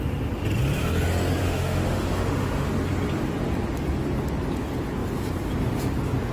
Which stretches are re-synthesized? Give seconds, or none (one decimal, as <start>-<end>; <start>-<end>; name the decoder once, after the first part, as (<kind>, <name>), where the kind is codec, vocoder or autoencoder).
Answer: 1.4-2.7 (autoencoder, DAC-VAE)